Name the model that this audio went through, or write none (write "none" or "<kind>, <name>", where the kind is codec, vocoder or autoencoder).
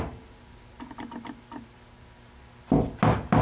none